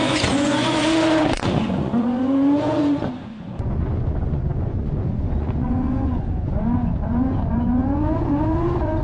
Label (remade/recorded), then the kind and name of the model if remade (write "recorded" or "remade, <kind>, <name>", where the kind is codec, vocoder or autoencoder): remade, vocoder, Vocos